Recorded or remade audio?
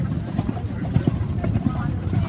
recorded